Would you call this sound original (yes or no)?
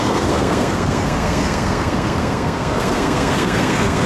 no